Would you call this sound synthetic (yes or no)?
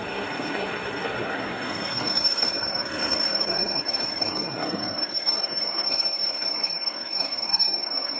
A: yes